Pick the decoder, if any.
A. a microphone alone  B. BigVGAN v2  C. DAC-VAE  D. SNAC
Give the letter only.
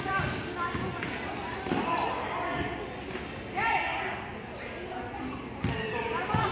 A